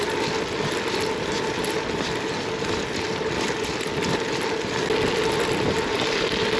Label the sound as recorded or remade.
recorded